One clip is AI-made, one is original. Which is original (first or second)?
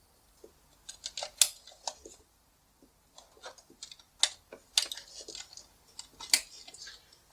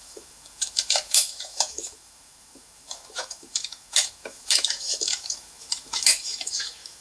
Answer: first